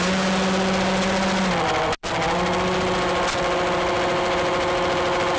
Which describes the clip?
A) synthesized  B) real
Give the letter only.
B